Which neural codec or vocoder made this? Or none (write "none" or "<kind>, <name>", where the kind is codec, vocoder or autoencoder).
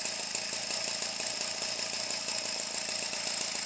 none